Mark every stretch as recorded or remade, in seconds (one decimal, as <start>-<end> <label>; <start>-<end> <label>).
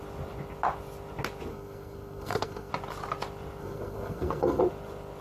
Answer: 0.0-1.5 recorded; 1.5-2.7 remade; 2.7-3.6 recorded; 3.6-4.6 remade; 4.6-5.2 recorded